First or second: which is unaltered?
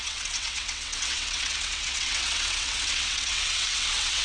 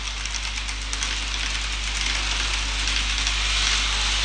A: second